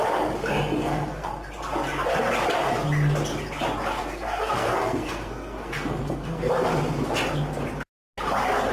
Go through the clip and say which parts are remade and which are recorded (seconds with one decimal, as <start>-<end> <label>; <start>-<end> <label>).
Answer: 0.0-0.8 recorded; 0.8-1.3 remade; 1.3-4.0 recorded; 4.0-6.5 remade; 6.5-8.7 recorded